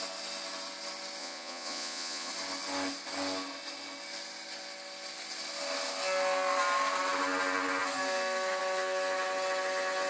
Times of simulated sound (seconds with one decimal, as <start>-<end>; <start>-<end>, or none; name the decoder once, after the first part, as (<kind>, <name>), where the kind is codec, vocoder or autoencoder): 1.2-2.3 (vocoder, Vocos)